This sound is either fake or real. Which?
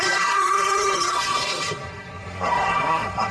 fake